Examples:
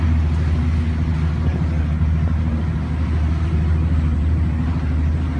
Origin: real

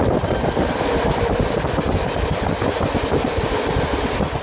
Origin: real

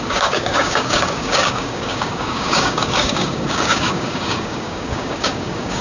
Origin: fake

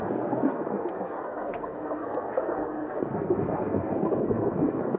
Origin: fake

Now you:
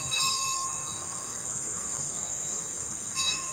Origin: fake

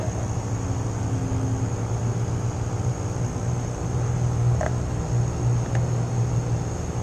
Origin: real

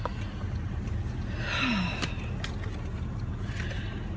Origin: real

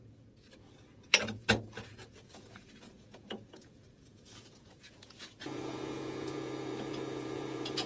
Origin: fake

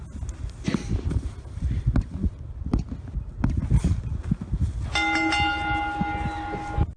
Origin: real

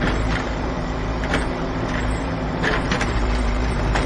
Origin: fake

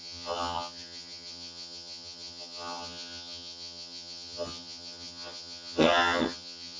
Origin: fake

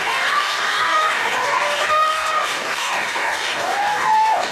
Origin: fake